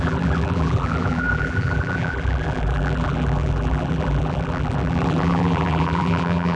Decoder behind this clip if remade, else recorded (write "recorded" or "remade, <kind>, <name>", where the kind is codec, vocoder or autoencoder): remade, vocoder, BigVGAN v2